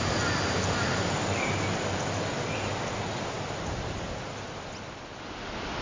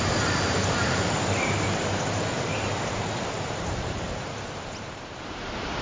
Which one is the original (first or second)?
first